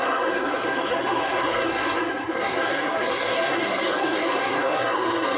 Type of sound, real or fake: fake